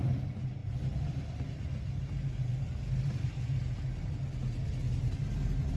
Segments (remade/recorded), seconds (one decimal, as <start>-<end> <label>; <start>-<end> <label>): 0.0-5.8 recorded